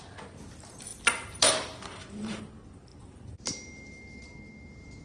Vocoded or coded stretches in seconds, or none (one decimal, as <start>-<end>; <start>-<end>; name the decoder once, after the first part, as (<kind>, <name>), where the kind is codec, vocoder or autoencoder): none